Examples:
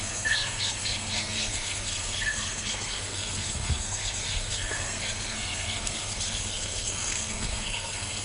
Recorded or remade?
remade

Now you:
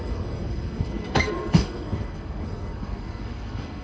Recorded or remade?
remade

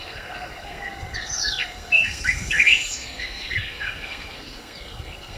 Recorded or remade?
remade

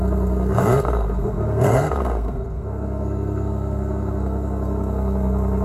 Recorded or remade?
remade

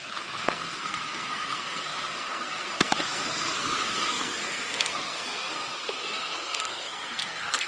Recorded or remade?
remade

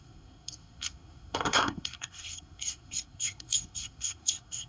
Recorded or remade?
remade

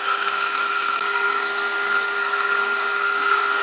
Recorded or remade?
remade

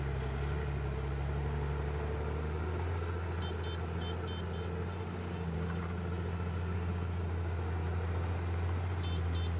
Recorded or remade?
recorded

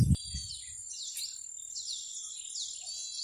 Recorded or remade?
recorded